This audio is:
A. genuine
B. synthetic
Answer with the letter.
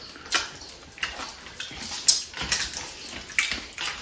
A